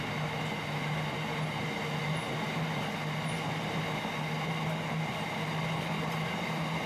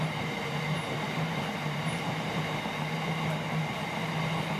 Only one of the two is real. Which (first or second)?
first